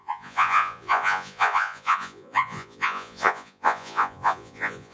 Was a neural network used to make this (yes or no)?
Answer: yes